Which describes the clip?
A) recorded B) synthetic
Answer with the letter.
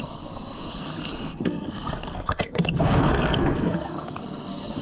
B